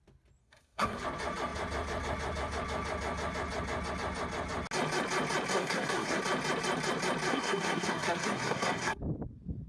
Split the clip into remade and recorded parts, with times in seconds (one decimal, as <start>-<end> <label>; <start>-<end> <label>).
0.0-0.4 recorded; 0.4-1.0 remade; 1.0-5.5 recorded; 5.5-6.2 remade; 6.2-7.3 recorded; 7.3-9.0 remade; 9.0-9.7 recorded